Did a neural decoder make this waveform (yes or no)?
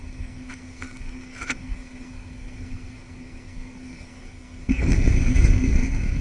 yes